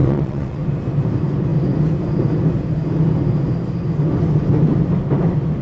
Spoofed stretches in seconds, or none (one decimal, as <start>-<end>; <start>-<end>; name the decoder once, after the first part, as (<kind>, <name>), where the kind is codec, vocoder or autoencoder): 0.0-0.6 (vocoder, WaveNeXt)